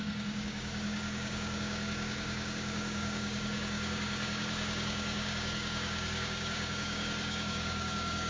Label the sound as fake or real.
fake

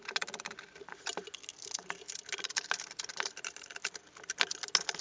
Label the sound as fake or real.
real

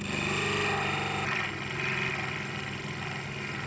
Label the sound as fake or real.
real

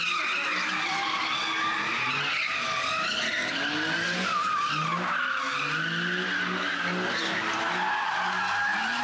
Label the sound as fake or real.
real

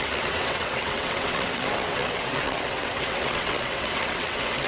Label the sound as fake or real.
fake